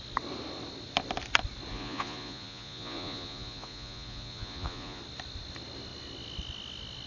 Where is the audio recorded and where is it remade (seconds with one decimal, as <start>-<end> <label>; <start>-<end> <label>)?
0.0-1.7 recorded; 1.7-5.0 remade; 5.0-7.1 recorded